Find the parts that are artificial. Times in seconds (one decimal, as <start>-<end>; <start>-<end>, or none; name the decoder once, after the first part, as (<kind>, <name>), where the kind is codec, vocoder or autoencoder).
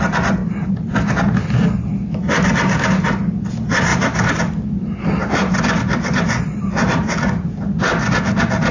0.4-0.9 (vocoder, BigVGAN v2); 3.9-4.4; 5.2-7.6